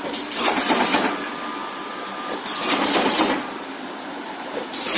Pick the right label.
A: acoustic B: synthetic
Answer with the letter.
B